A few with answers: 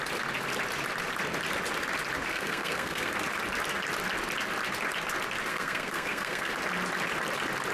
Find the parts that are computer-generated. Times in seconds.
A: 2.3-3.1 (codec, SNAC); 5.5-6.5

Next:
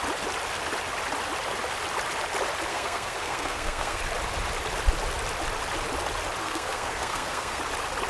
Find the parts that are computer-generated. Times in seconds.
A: 2.7-4.0 (codec, SNAC); 6.4-7.6

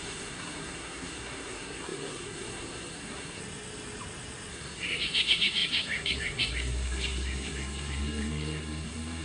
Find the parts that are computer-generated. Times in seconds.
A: 0.0-3.4 (codec, SNAC); 4.5-9.2

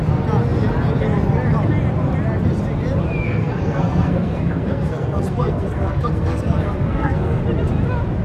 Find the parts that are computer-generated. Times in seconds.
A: 3.2-7.4 (codec, SNAC)

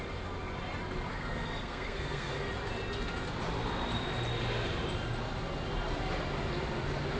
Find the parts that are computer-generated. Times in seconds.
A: 1.1-2.5 (codec, SNAC)